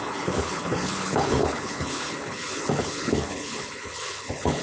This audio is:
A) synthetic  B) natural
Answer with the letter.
A